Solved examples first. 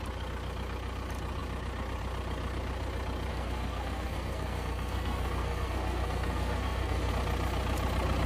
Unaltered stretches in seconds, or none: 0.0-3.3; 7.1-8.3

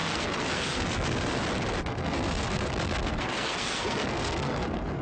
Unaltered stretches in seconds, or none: 1.4-1.9

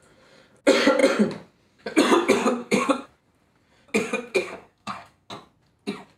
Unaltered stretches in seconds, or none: 0.0-2.6; 3.1-4.3; 5.3-6.2

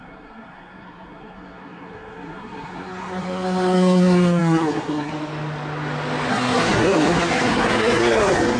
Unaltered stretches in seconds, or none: 5.1-6.3

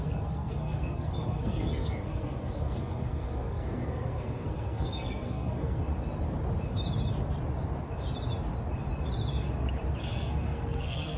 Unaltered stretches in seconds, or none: 5.8-10.0

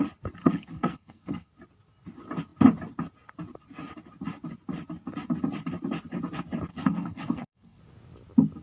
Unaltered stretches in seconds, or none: 0.0-0.4; 1.5-6.7; 7.8-8.6

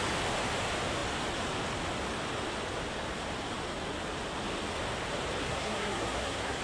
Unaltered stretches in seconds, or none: 0.0-5.4

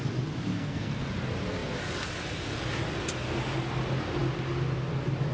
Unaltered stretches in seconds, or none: 0.0-0.5; 1.1-5.3